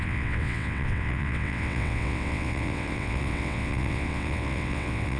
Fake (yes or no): yes